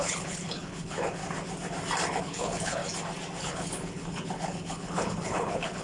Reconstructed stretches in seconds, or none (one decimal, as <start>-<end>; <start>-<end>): 0.0-1.2; 2.2-2.8; 3.4-5.8